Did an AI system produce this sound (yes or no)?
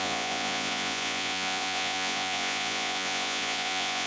yes